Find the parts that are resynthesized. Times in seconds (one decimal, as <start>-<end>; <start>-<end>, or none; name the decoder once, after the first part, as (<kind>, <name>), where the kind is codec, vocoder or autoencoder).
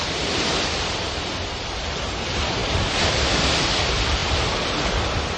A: 0.0-4.2 (vocoder, BigVGAN v2)